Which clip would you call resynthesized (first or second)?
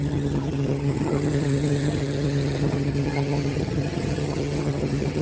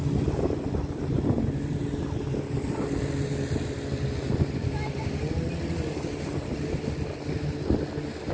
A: first